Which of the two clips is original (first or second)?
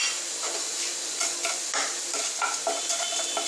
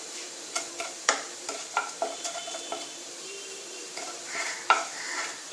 first